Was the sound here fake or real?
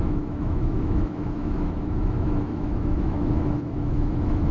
fake